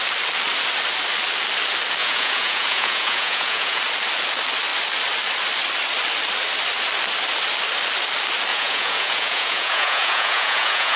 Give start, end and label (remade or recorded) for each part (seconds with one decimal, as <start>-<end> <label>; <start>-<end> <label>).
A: 0.0-2.0 recorded; 2.0-3.8 remade; 3.8-8.5 recorded; 8.5-11.0 remade